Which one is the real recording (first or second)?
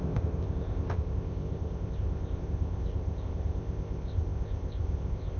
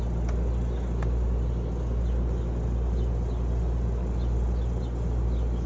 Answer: second